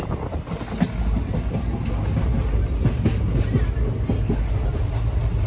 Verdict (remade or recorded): recorded